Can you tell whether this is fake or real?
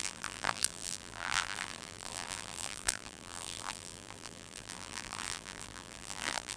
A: fake